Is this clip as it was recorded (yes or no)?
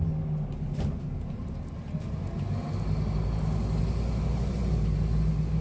yes